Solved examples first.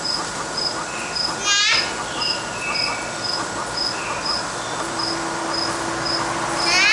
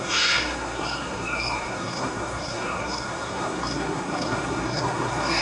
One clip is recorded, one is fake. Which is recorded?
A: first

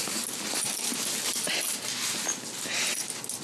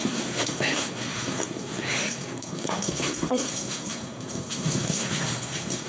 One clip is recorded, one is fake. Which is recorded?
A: first